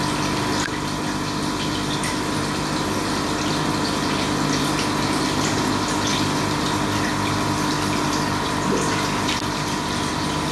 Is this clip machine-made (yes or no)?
no